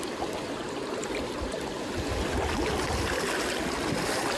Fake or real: real